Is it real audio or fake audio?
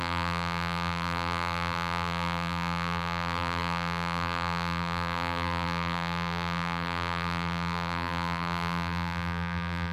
fake